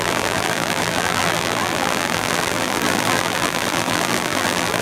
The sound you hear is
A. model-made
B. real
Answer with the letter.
A